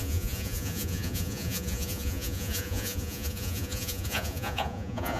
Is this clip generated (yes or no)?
yes